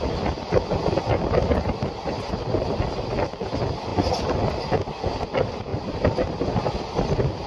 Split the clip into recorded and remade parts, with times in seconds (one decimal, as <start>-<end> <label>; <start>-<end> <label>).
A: 0.0-7.5 recorded